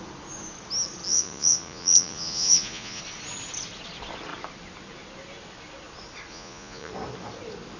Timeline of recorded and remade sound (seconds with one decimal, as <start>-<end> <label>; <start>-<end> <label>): 0.0-1.1 recorded; 1.1-3.0 remade; 3.0-6.3 recorded; 6.3-6.9 remade; 6.9-7.8 recorded